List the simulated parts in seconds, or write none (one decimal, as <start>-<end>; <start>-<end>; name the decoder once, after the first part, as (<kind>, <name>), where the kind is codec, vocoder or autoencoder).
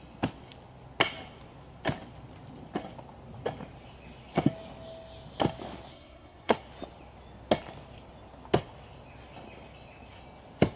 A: 5.9-6.6 (codec, SNAC)